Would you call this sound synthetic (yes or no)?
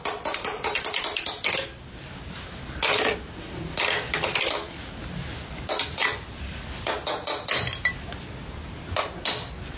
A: no